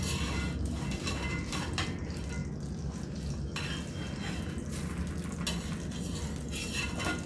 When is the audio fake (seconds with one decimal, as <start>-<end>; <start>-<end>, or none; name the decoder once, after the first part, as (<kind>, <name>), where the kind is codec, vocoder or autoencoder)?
none

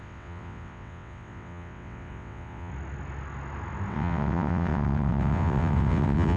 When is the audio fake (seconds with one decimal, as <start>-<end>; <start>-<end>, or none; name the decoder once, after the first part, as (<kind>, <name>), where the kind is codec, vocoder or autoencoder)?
0.0-2.7 (vocoder, WaveNeXt); 3.9-6.4